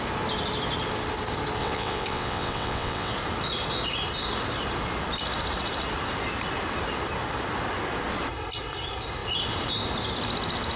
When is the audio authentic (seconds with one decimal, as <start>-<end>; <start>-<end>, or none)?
0.0-1.6; 3.1-10.8